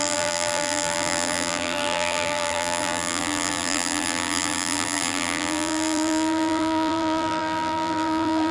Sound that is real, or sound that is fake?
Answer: fake